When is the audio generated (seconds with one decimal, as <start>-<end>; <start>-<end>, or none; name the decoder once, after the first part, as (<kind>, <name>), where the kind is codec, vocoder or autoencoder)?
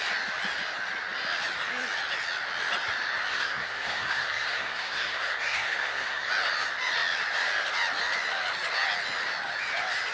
3.3-6.3 (codec, SNAC)